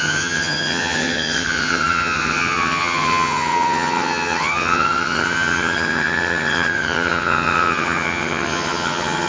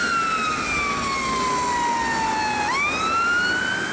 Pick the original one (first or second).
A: second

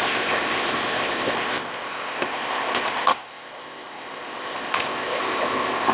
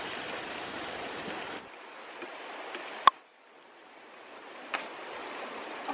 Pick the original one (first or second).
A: second